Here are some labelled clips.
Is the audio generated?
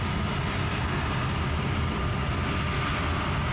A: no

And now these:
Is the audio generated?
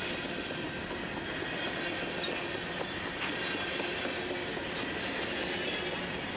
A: no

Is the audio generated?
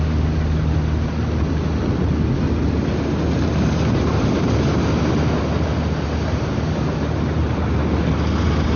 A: no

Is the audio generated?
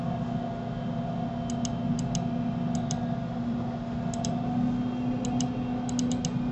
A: no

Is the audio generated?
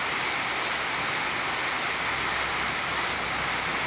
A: no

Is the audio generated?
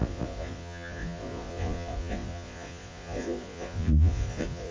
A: yes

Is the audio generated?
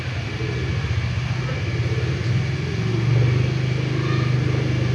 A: no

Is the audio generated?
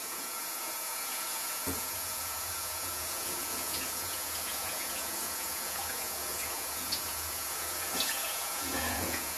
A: yes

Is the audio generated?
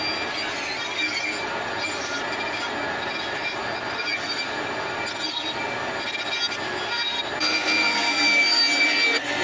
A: no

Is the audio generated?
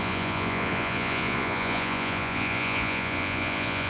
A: yes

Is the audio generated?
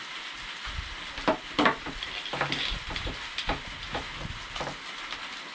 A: no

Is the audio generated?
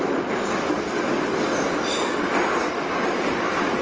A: no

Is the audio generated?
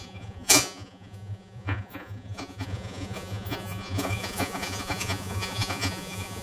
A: yes